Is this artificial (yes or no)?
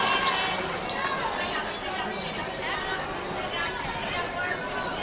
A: no